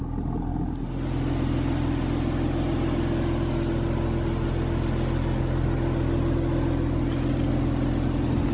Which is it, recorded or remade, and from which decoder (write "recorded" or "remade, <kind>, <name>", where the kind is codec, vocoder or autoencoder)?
recorded